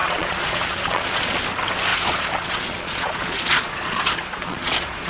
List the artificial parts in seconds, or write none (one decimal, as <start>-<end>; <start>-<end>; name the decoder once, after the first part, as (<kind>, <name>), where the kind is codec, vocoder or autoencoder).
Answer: 0.0-1.4 (vocoder, Vocos); 1.9-5.1